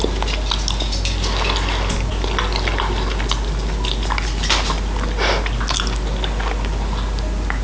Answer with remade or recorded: recorded